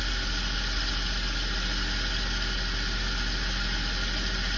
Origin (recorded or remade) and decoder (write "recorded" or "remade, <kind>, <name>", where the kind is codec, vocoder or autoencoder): recorded